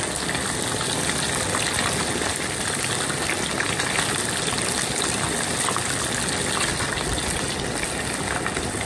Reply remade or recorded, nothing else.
recorded